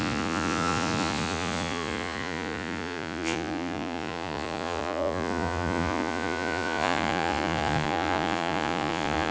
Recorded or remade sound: remade